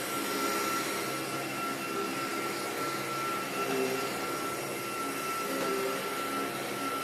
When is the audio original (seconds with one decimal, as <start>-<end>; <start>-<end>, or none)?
0.0-7.0